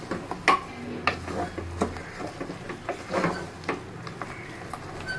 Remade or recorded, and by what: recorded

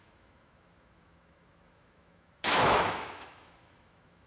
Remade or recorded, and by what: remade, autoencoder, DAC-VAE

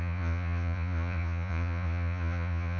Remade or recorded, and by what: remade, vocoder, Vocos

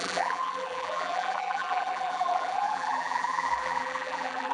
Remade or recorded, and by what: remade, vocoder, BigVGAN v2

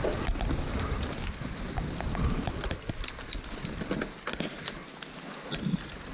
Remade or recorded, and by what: recorded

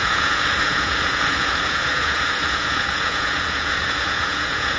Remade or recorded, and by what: remade, vocoder, Vocos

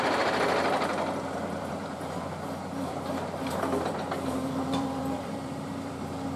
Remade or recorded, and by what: remade, vocoder, BigVGAN v2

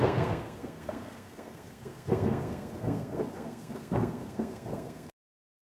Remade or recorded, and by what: remade, codec, SNAC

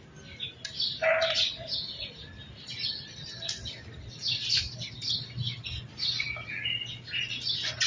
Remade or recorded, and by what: recorded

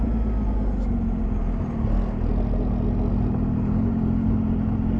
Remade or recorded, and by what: recorded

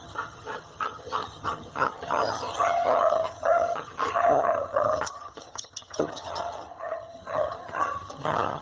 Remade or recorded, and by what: remade, vocoder, HiFi-GAN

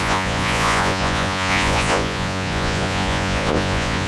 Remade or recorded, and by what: remade, vocoder, Vocos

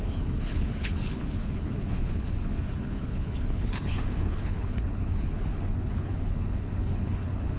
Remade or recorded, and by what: remade, codec, HILCodec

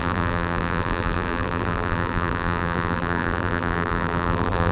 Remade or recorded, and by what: remade, vocoder, BigVGAN v2